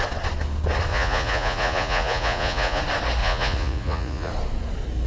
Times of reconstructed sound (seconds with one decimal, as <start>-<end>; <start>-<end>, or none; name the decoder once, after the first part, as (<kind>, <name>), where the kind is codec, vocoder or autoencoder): 0.9-2.8 (vocoder, Vocos); 3.2-4.3